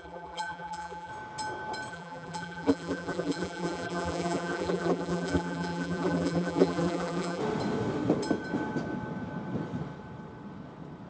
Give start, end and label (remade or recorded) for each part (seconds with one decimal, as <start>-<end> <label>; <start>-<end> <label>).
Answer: 0.0-1.1 remade; 1.1-1.9 recorded; 1.9-7.4 remade; 7.4-11.1 recorded